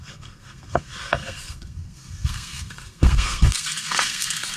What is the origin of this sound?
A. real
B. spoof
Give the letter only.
B